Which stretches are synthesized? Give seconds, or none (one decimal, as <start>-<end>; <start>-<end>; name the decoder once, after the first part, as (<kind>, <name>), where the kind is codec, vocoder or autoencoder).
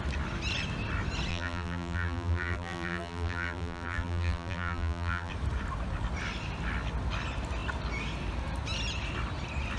1.3-5.3 (vocoder, BigVGAN v2)